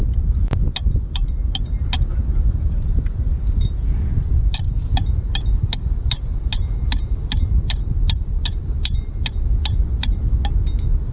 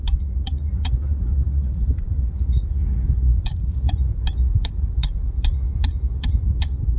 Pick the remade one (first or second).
second